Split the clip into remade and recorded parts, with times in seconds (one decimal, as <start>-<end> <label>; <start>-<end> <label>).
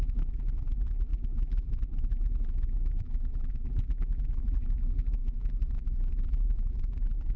0.0-7.4 remade